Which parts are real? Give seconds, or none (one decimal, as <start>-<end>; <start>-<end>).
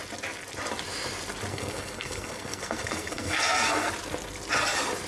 0.0-1.5; 3.9-5.1